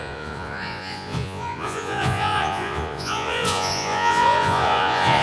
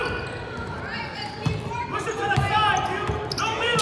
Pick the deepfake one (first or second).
first